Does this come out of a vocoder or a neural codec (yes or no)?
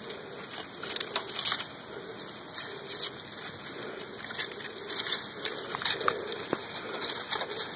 no